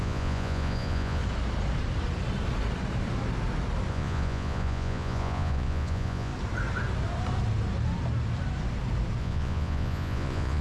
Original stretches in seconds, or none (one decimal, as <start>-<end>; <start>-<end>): 1.2-3.9; 6.3-9.2